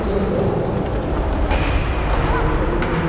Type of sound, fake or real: real